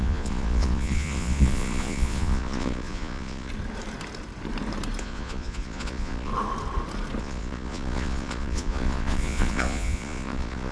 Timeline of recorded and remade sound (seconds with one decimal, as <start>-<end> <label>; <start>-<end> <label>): 0.0-3.5 remade; 3.5-5.0 recorded; 5.0-6.3 remade; 6.3-7.2 recorded; 7.2-10.7 remade